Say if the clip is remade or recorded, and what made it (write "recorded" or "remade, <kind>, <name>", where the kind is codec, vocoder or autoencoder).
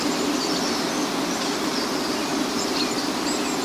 recorded